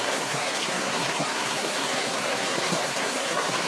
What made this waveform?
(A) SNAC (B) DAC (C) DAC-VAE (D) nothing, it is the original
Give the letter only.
A